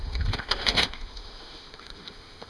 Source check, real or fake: fake